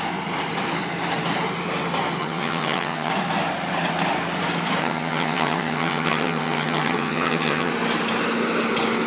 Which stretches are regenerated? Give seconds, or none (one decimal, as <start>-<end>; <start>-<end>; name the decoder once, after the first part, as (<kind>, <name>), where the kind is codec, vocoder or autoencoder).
2.2-3.1 (vocoder, HiFi-GAN); 4.8-7.7